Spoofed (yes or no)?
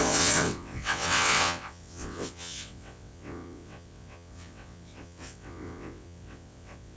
yes